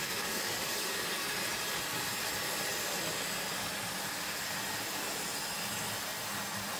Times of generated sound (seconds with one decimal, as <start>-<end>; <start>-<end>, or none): 0.0-1.1